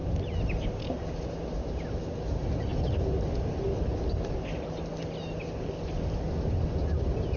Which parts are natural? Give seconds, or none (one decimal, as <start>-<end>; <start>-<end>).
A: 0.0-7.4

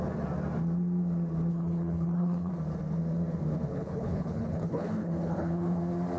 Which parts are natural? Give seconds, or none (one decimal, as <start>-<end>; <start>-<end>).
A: 0.0-1.5; 2.5-3.7; 5.8-6.2

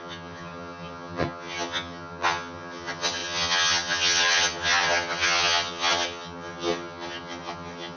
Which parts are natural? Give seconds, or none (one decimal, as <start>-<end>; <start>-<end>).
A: none

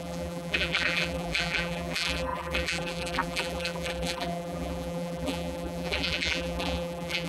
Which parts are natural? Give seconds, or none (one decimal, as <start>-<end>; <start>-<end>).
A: none

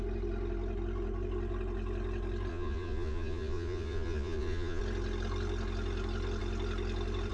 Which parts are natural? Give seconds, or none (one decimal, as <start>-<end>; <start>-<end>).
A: 0.0-2.5; 4.8-7.3